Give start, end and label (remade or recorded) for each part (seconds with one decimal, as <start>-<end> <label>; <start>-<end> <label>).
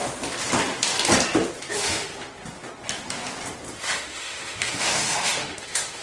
0.0-1.7 recorded; 1.7-2.1 remade; 2.1-3.8 recorded; 3.8-6.0 remade